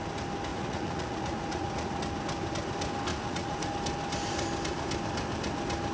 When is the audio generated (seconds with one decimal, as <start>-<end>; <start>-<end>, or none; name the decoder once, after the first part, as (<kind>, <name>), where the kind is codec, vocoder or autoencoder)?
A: 0.5-2.0 (vocoder, Vocos); 3.1-3.7